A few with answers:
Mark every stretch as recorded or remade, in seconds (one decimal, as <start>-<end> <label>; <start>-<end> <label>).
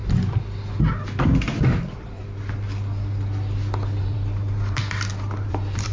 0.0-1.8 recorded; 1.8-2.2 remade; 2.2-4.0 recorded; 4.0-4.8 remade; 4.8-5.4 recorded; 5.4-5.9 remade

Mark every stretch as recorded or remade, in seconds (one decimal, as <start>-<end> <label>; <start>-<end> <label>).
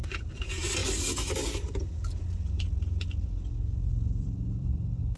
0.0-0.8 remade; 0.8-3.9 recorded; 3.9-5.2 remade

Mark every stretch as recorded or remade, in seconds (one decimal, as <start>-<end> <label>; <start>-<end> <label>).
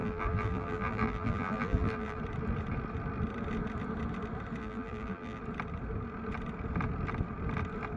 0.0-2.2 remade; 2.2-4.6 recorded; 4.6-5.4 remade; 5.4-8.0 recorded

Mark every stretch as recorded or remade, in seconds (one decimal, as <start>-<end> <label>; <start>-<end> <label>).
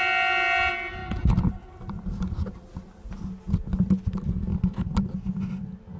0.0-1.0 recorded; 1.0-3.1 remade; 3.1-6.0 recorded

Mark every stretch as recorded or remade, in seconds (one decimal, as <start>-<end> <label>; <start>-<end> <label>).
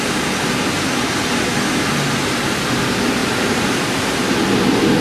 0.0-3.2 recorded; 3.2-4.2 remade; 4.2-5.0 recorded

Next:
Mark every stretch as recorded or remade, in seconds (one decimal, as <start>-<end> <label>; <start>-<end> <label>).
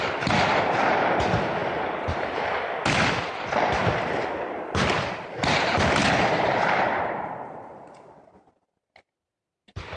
0.0-1.6 remade; 1.6-3.2 recorded; 3.2-3.8 remade; 3.8-6.2 recorded; 6.2-10.0 remade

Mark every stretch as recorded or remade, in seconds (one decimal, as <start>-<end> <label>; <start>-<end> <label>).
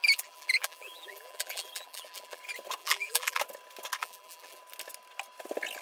0.0-2.4 remade; 2.4-2.8 recorded; 2.8-3.4 remade; 3.4-4.0 recorded; 4.0-4.6 remade; 4.6-5.8 recorded